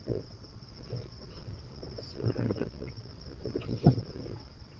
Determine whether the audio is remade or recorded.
remade